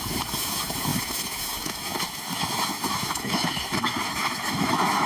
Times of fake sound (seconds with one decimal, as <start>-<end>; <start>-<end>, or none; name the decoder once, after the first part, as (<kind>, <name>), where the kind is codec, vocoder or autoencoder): 0.0-5.1 (autoencoder, DAC-VAE)